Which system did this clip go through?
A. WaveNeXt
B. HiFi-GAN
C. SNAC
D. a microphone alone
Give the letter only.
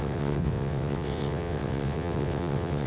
A